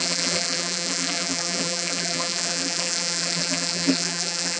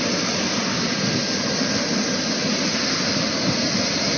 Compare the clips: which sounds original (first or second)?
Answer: second